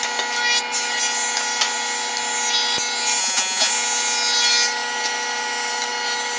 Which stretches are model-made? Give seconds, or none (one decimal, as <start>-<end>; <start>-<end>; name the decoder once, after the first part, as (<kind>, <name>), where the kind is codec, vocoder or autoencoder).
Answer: 3.2-3.7 (vocoder, Vocos)